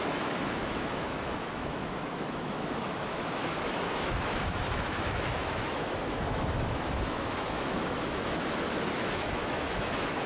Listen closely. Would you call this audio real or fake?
fake